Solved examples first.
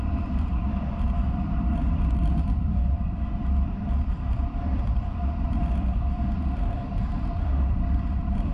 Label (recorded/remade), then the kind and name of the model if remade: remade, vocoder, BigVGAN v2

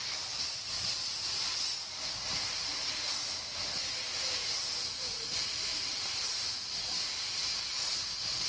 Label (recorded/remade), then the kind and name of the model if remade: recorded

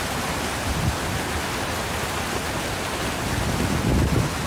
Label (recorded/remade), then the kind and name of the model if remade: recorded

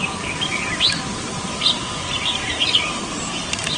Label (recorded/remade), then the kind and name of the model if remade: remade, vocoder, BigVGAN v2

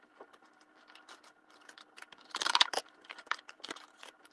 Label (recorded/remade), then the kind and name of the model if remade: remade, vocoder, BigVGAN v2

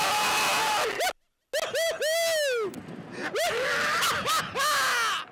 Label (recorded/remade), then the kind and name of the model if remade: recorded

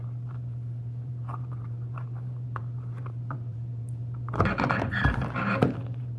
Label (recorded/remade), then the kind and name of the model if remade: remade, vocoder, BigVGAN v2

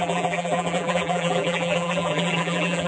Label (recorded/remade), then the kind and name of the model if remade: remade, vocoder, BigVGAN v2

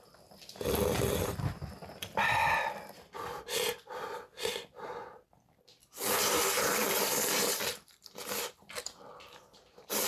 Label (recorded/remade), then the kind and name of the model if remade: remade, vocoder, BigVGAN v2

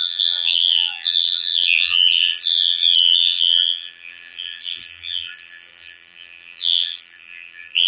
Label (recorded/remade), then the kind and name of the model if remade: remade, vocoder, BigVGAN v2